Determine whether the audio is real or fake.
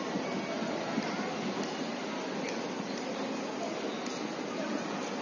real